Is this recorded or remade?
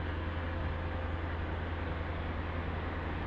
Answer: recorded